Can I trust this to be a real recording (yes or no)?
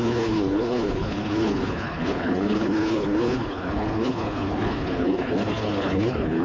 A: no